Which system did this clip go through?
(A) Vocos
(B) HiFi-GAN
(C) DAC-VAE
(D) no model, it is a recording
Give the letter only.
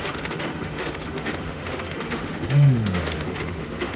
C